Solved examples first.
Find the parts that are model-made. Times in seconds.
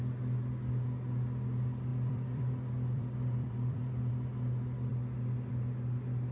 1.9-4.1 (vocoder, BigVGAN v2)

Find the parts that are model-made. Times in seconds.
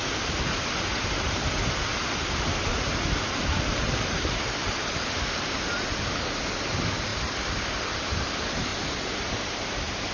1.9-5.6 (vocoder, BigVGAN v2)